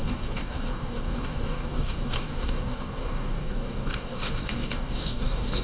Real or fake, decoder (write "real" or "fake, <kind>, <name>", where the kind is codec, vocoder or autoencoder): fake, codec, DAC